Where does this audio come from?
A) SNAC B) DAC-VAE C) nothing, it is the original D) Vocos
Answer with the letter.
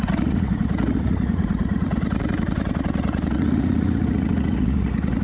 D